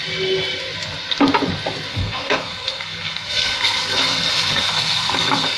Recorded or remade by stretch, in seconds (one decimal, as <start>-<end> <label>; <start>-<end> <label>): 0.0-1.9 recorded; 1.9-5.6 remade